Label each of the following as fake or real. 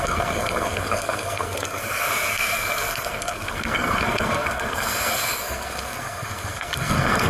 fake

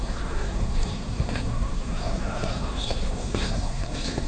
fake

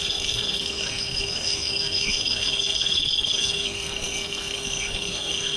fake